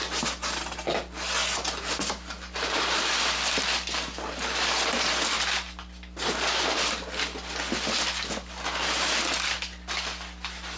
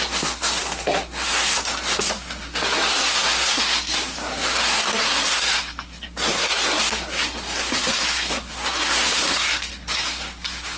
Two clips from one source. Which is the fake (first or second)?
second